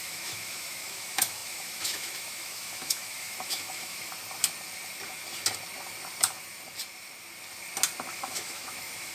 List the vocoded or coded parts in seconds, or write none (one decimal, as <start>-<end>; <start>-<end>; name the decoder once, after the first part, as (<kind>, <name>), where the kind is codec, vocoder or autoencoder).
0.0-4.1 (autoencoder, DAC-VAE); 8.1-9.1